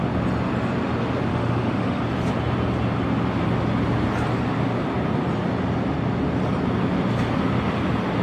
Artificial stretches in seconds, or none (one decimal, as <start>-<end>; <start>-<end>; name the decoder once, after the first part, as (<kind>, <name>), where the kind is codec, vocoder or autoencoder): 1.3-2.0 (autoencoder, DAC-VAE)